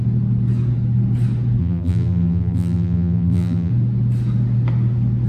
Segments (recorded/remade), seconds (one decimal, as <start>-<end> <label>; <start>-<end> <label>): 0.0-1.6 recorded; 1.6-3.7 remade; 3.7-5.3 recorded